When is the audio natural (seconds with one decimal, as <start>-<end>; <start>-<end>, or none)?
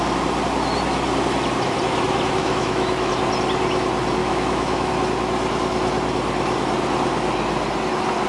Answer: 0.0-2.4; 3.1-4.2; 4.9-8.3